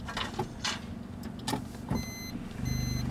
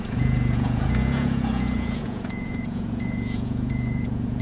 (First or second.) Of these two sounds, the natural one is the first